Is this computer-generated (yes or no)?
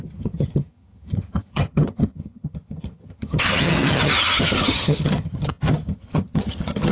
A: yes